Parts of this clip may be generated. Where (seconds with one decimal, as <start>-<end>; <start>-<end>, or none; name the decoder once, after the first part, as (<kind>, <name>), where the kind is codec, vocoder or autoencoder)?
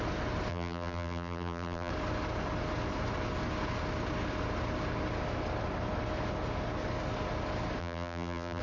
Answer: 0.5-1.9 (vocoder, BigVGAN v2); 7.8-8.6